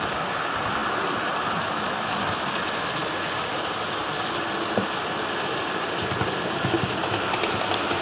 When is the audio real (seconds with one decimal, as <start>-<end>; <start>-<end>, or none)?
0.0-8.0